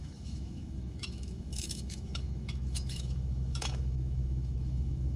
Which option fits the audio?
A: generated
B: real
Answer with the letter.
A